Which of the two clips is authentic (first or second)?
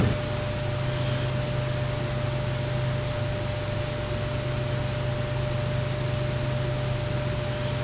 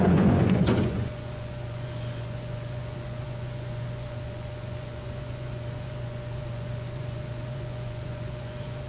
first